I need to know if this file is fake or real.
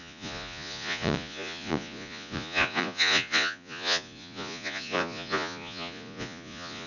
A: fake